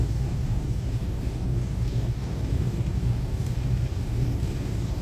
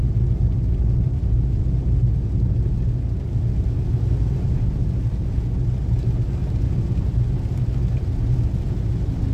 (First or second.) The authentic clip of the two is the second